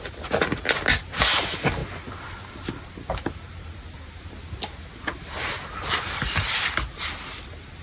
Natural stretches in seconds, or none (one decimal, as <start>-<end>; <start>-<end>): 0.0-7.8